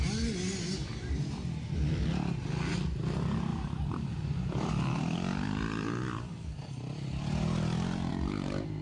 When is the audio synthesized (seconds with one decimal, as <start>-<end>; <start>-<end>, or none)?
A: 0.8-2.0; 3.5-8.1